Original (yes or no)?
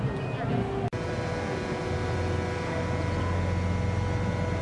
yes